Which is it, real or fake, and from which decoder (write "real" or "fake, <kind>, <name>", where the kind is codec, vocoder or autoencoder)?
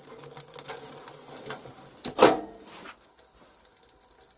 real